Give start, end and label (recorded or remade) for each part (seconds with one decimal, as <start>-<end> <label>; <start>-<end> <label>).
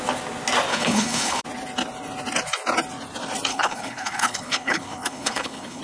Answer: 0.0-0.7 recorded; 0.7-1.4 remade; 1.4-3.5 recorded; 3.5-5.8 remade